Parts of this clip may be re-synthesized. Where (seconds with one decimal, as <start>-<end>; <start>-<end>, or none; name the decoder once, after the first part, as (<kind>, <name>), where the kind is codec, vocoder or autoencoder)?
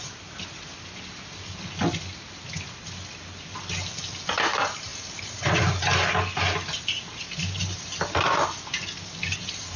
none